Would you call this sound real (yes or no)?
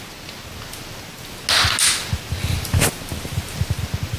yes